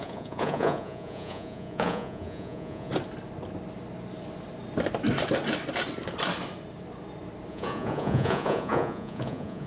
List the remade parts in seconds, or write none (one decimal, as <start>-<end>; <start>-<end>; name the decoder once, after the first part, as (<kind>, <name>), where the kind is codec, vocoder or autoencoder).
0.0-2.9 (vocoder, Vocos); 7.5-9.7